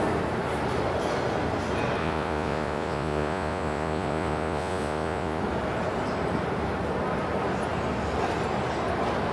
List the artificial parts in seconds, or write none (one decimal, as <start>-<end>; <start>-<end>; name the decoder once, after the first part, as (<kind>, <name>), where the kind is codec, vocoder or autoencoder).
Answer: 2.0-5.4 (vocoder, Vocos)